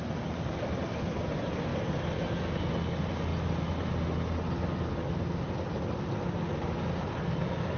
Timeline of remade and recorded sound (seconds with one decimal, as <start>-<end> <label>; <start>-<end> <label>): 0.0-7.8 recorded

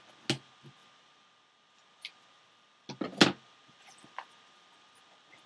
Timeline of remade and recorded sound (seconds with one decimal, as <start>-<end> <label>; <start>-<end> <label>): 0.0-5.5 recorded

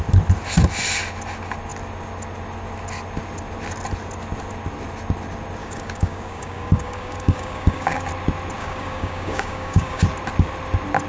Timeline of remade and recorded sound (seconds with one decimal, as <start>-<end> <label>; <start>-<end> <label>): 0.0-5.6 recorded; 5.6-8.1 remade; 8.1-8.6 recorded; 8.6-10.0 remade; 10.0-11.1 recorded

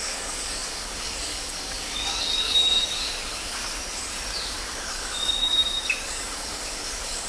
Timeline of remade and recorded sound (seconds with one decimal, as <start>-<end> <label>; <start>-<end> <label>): 0.0-3.6 remade; 3.6-4.6 recorded; 4.6-7.3 remade

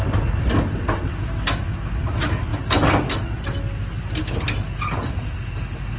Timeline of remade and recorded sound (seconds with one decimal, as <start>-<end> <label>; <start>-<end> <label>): 0.0-6.0 recorded

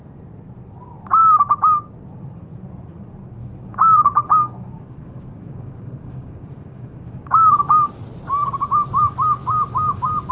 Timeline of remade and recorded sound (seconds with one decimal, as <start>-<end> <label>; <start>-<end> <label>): 0.0-3.4 recorded; 3.4-7.6 remade; 7.6-9.4 recorded; 9.4-10.3 remade

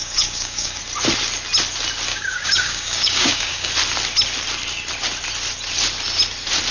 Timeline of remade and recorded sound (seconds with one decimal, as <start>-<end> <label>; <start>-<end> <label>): 0.0-0.8 remade; 0.8-2.1 recorded; 2.1-3.7 remade; 3.7-6.7 recorded